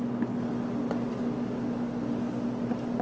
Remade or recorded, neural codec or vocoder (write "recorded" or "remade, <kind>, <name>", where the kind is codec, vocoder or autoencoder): recorded